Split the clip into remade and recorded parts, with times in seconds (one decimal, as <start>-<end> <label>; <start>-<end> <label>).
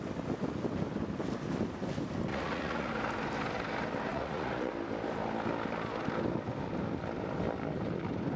0.0-2.3 recorded; 2.3-2.9 remade; 2.9-4.1 recorded; 4.1-4.7 remade; 4.7-8.4 recorded